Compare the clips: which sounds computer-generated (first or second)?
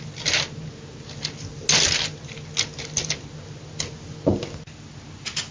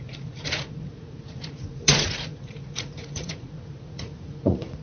second